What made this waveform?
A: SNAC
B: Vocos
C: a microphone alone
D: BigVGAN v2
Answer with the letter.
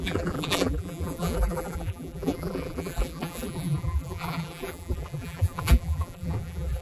D